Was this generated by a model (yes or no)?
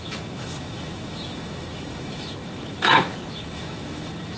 yes